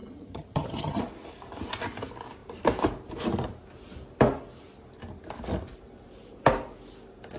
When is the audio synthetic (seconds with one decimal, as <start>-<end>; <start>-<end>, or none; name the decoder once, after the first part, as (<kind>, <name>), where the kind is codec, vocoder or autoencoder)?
0.0-1.0 (vocoder, HiFi-GAN)